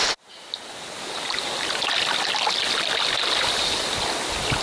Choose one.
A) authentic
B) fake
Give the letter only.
A